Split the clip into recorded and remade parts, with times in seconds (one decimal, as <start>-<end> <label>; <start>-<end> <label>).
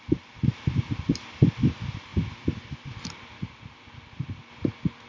0.0-5.1 recorded